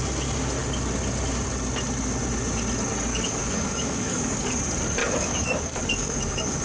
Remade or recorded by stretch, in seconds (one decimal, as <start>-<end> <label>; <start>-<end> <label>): 0.0-3.1 recorded; 3.1-4.5 remade; 4.5-5.0 recorded; 5.0-6.6 remade